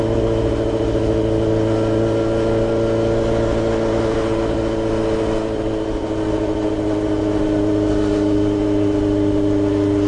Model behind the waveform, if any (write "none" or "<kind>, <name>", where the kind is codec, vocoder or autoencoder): none